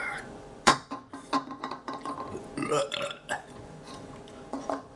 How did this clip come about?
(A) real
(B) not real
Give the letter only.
B